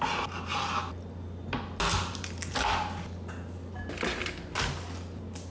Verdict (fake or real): real